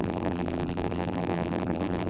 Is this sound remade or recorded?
remade